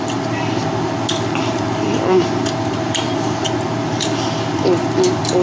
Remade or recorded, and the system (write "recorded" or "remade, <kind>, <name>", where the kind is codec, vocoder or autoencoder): recorded